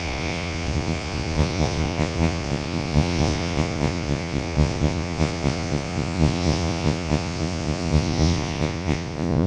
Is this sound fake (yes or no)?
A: yes